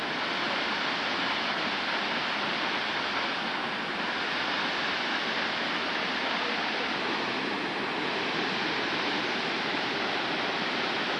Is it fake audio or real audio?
real